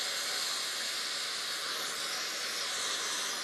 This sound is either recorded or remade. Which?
recorded